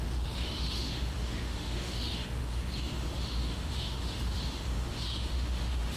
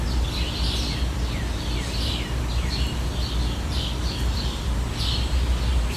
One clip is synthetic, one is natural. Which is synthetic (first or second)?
first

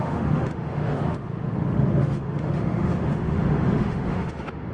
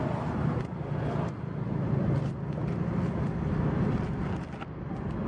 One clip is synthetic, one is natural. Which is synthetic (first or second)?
first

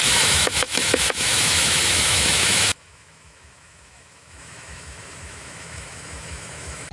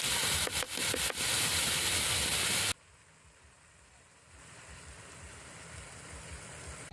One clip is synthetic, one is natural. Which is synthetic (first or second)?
first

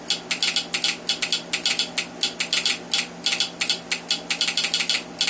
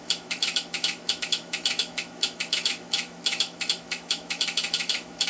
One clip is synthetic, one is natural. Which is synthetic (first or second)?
second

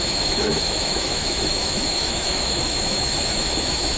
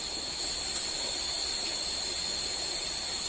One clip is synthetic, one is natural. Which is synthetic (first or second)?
first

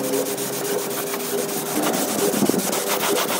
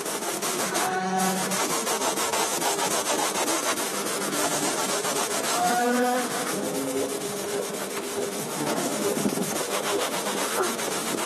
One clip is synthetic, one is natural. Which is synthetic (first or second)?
second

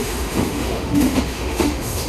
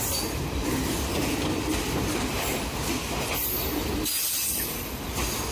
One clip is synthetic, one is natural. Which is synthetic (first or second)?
first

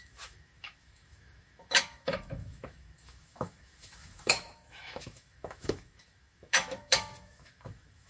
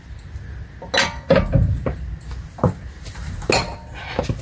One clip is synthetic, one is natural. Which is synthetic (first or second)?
first